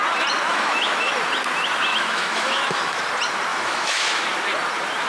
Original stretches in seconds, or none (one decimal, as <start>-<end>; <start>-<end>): 0.0-0.5; 1.1-1.9; 3.0-3.5; 4.2-5.1